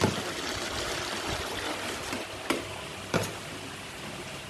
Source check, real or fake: real